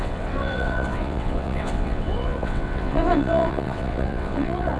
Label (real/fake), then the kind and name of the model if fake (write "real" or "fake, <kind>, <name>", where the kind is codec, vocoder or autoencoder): fake, vocoder, WaveNeXt